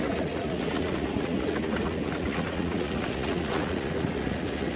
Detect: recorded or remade remade